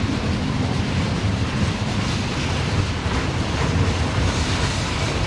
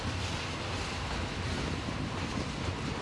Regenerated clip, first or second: first